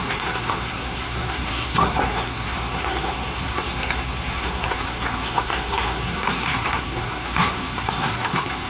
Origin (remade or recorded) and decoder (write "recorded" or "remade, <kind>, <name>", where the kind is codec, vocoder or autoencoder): remade, codec, SNAC